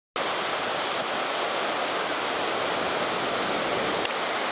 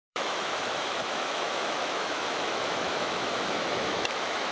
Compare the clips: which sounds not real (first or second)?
second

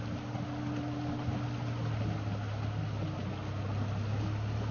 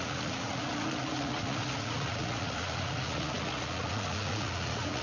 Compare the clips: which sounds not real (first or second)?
second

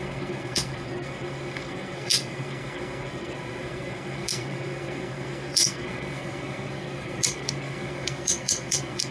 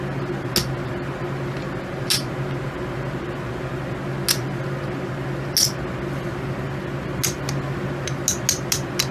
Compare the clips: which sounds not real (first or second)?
first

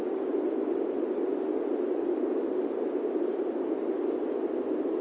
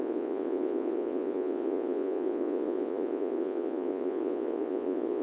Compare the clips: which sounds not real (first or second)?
second